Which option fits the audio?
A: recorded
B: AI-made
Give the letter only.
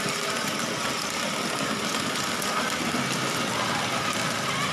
A